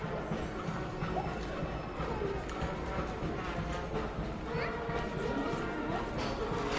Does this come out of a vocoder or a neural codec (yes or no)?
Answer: no